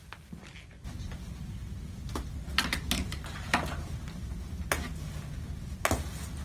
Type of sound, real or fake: real